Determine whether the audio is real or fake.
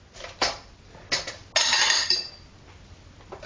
real